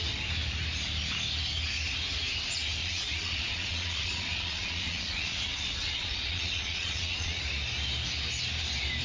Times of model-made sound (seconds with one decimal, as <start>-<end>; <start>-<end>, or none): 2.8-7.4